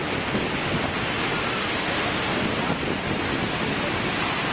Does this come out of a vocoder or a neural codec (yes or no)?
no